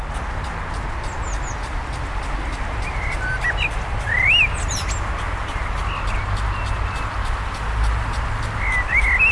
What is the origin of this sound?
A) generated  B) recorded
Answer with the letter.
B